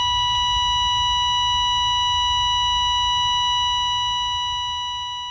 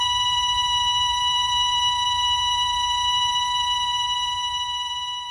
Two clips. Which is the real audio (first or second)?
first